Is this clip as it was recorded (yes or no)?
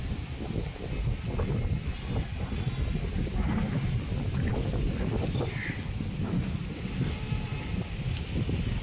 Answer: yes